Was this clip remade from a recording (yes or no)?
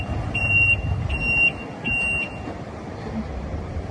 no